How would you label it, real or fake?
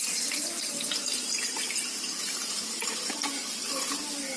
real